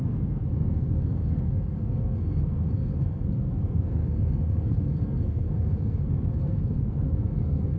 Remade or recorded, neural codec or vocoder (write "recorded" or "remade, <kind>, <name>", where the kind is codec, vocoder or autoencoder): remade, codec, SNAC